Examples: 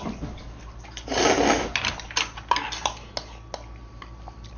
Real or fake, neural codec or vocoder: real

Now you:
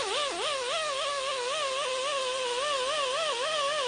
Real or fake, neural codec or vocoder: real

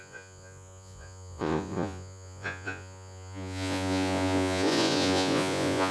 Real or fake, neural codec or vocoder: fake, vocoder, Vocos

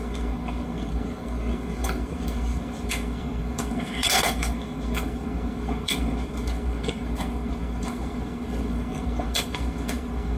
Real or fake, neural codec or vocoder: fake, codec, SNAC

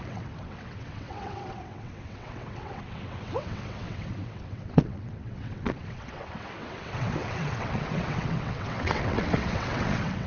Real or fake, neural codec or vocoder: fake, vocoder, WaveNeXt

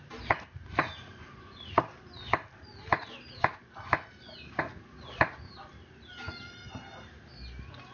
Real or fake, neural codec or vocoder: real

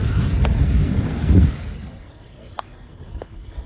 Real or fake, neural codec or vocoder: fake, codec, SNAC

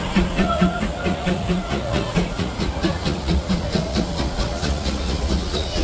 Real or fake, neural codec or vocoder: fake, vocoder, Vocos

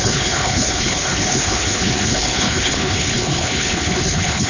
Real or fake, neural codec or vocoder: fake, codec, HILCodec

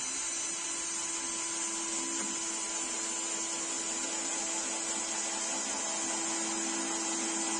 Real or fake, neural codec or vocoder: real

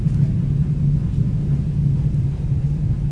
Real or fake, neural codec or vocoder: real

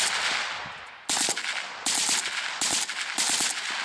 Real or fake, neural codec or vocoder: real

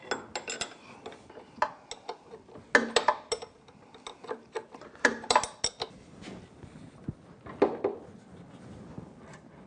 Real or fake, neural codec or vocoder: real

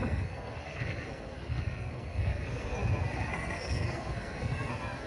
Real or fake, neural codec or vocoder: fake, codec, SNAC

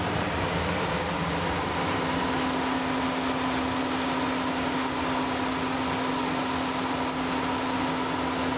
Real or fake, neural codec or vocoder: real